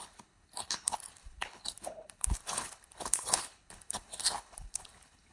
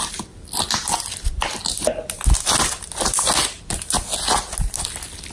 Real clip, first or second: second